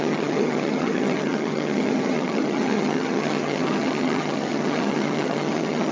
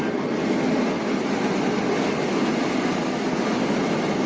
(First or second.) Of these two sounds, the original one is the second